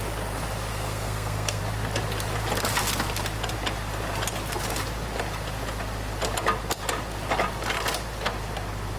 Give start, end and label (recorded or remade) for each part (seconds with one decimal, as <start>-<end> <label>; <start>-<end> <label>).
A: 0.0-0.7 recorded; 0.7-1.6 remade; 1.6-9.0 recorded